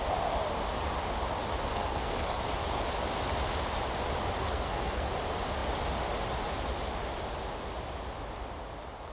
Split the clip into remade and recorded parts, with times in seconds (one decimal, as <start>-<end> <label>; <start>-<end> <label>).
0.0-1.7 recorded; 1.7-2.4 remade; 2.4-4.4 recorded; 4.4-5.1 remade; 5.1-9.1 recorded